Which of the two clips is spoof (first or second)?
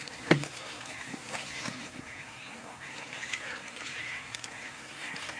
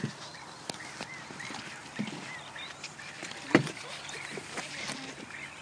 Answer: first